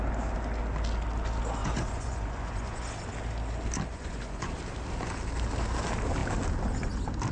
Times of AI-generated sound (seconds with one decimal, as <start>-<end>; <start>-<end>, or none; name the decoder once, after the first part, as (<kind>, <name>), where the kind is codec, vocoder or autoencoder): 1.6-2.8 (vocoder, Vocos); 3.9-4.5